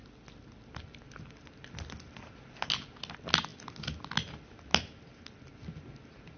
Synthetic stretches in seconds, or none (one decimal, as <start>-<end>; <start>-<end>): none